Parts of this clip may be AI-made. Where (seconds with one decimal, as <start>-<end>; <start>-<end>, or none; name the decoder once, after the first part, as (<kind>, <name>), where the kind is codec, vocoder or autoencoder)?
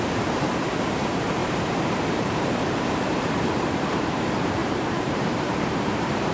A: 0.0-6.3 (vocoder, BigVGAN v2)